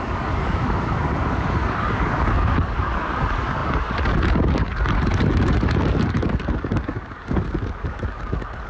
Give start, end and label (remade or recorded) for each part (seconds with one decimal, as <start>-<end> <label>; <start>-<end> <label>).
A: 0.0-8.7 remade